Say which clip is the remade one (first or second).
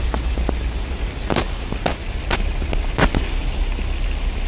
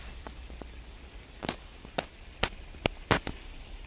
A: second